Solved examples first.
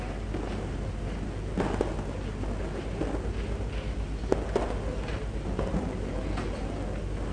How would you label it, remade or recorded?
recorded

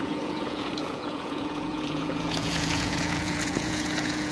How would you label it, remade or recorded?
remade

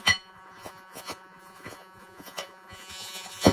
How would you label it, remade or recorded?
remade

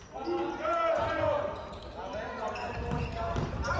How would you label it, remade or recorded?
recorded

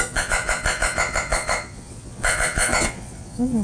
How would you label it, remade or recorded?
remade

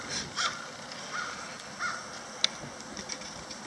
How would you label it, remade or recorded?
recorded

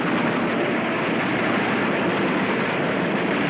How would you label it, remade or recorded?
recorded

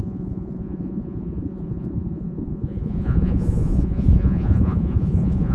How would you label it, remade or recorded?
remade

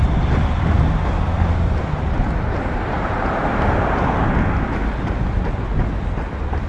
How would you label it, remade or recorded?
recorded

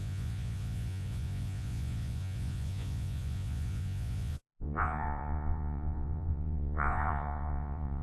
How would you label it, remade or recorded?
remade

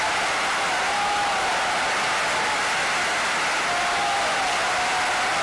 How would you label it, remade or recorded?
recorded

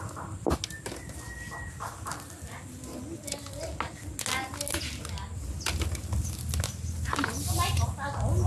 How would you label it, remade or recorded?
recorded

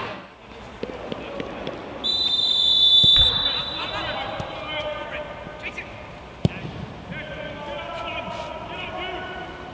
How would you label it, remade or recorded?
recorded